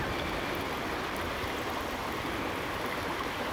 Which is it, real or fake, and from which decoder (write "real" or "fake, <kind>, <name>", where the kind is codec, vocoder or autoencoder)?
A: real